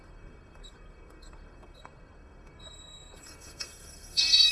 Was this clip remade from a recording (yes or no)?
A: yes